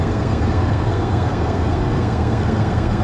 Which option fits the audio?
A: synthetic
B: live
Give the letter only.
A